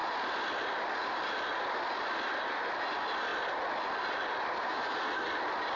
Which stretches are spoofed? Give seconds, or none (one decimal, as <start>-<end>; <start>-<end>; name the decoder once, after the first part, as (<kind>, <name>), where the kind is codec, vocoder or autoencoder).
none